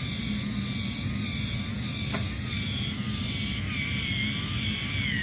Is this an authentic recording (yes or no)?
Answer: yes